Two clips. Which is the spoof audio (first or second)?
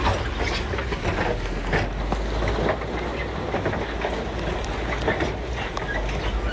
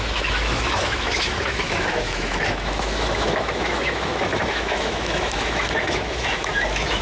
second